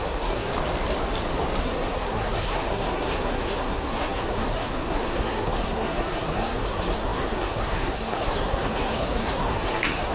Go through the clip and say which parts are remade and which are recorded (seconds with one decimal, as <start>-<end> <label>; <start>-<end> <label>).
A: 0.0-0.5 remade; 0.5-1.6 recorded; 1.6-10.1 remade